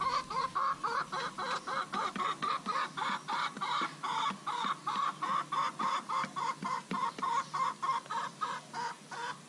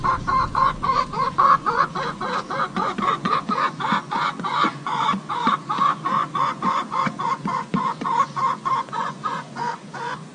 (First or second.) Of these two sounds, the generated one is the second